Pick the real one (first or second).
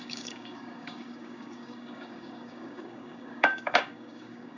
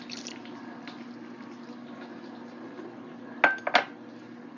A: second